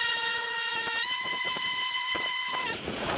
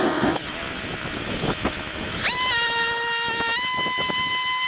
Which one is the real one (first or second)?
second